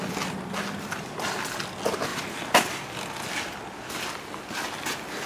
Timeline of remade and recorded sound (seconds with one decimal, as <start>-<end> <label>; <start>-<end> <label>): 0.0-5.3 recorded